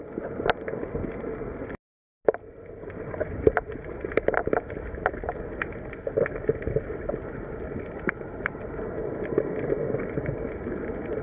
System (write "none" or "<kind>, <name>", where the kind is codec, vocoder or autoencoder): none